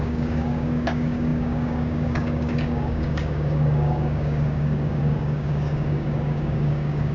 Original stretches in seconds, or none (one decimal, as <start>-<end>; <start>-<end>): none